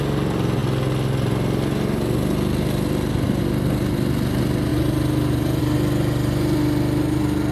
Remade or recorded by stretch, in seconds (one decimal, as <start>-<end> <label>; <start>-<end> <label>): 0.0-4.7 recorded; 4.7-5.6 remade; 5.6-7.5 recorded